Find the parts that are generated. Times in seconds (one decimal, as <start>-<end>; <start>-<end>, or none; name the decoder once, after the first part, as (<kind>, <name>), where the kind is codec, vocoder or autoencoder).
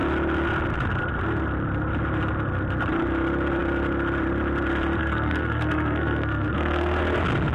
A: 5.0-7.0 (codec, SNAC)